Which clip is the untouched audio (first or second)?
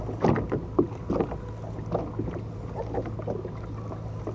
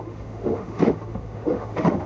first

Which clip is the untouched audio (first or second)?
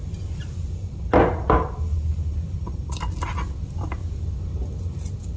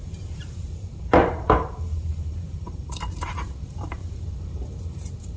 first